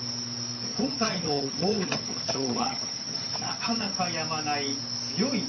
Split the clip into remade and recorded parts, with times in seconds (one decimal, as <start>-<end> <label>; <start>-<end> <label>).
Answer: 0.0-0.7 recorded; 0.7-4.0 remade; 4.0-5.5 recorded